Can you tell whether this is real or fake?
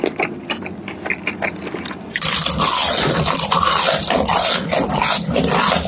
real